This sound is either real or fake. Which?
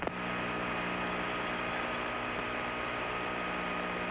real